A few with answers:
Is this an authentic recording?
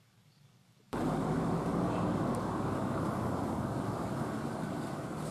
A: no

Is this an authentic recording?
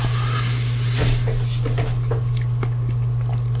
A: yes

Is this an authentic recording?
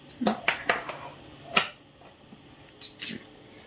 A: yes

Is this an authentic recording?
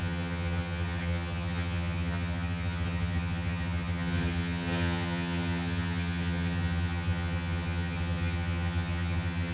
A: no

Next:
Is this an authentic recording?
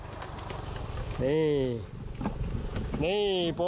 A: yes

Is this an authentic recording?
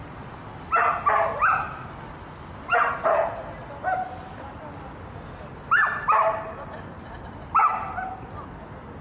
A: yes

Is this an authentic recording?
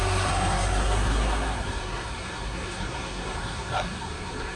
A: no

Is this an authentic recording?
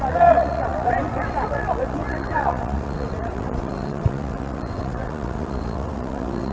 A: no